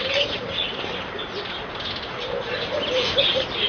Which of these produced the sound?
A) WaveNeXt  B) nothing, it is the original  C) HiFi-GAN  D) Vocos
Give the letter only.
B